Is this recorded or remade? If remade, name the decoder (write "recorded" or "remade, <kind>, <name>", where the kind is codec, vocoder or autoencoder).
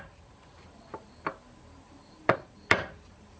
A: remade, vocoder, BigVGAN v2